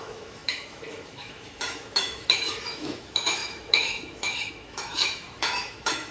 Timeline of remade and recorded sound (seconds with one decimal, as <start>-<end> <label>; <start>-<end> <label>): 0.0-6.1 remade